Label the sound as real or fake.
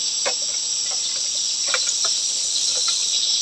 real